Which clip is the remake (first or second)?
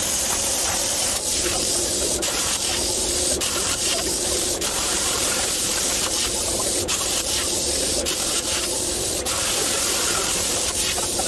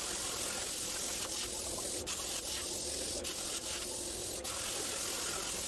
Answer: first